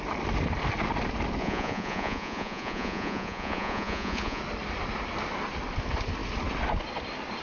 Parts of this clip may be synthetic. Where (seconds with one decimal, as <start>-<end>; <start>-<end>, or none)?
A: 1.4-4.4

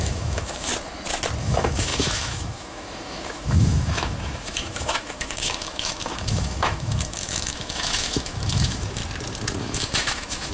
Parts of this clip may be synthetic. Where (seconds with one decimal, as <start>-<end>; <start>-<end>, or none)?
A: 0.0-0.7; 1.4-9.0; 9.6-10.5

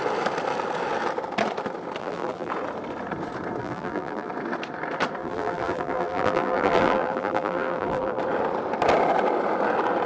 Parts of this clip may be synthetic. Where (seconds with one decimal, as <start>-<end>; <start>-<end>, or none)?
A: 2.0-2.5; 3.6-4.3; 5.2-8.2

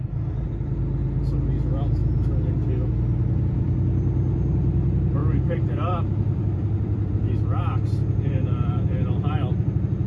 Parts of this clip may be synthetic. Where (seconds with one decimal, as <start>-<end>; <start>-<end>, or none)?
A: 5.2-7.1

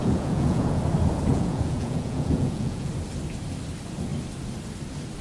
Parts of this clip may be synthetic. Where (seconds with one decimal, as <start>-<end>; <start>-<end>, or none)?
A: 0.0-0.8; 1.3-2.9

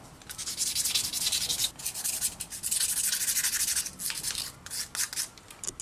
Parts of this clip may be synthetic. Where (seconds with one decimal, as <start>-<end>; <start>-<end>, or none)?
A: none